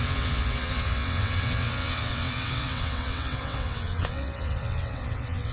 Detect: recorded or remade remade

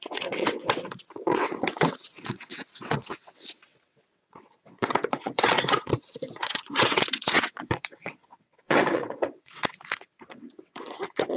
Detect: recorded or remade remade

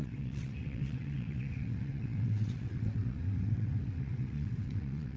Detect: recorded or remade remade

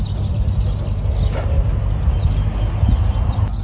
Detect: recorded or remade recorded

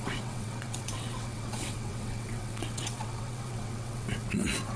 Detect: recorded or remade remade